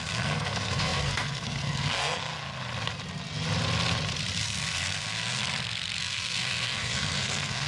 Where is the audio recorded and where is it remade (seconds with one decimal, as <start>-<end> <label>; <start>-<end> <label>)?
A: 0.0-2.3 remade; 2.3-4.4 recorded; 4.4-5.4 remade; 5.4-6.0 recorded; 6.0-7.7 remade